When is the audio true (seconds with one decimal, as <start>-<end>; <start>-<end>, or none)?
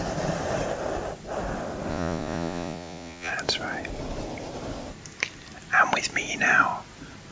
0.0-1.9; 3.3-7.3